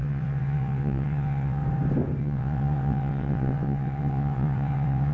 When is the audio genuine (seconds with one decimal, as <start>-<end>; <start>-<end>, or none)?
1.6-2.2